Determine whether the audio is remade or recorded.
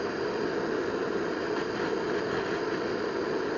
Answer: recorded